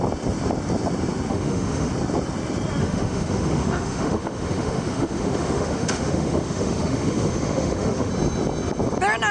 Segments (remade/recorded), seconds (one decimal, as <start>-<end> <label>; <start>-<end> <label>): 0.0-1.3 recorded; 1.3-1.9 remade; 1.9-2.8 recorded; 2.8-8.1 remade; 8.1-9.3 recorded

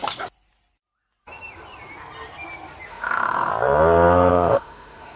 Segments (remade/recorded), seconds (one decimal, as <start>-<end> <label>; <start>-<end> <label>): 0.0-2.9 recorded; 2.9-3.5 remade; 3.5-4.3 recorded; 4.3-5.2 remade

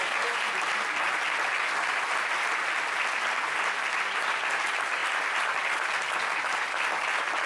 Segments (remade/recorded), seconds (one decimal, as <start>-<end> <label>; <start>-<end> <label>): 0.0-7.5 recorded

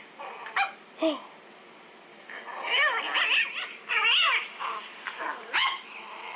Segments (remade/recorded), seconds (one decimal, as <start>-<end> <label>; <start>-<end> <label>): 0.0-2.1 recorded; 2.1-3.0 remade; 3.0-5.6 recorded; 5.6-6.4 remade

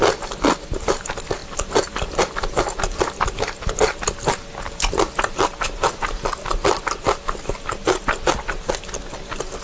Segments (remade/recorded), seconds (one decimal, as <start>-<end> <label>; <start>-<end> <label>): 0.0-9.6 recorded